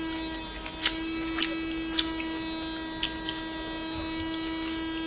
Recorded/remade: recorded